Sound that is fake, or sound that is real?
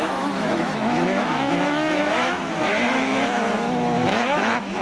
fake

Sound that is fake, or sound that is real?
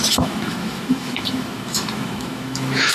fake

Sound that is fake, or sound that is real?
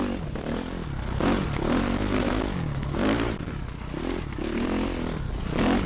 real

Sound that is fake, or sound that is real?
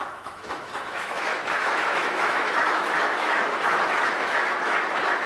fake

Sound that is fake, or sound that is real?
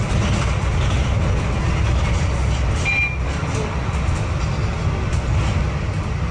real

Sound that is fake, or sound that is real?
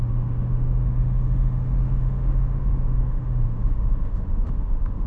fake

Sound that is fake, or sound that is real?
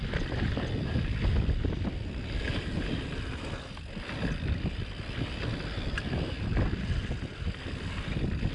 real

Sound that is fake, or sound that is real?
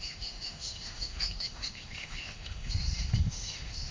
fake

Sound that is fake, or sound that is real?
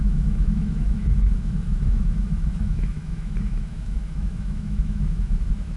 fake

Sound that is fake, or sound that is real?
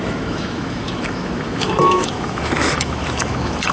fake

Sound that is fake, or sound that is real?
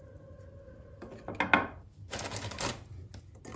real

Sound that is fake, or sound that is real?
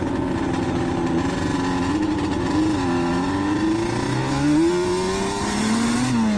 real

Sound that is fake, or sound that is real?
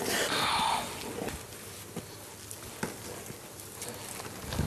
real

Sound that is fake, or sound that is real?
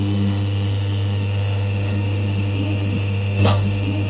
fake